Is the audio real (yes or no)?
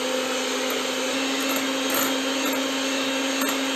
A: yes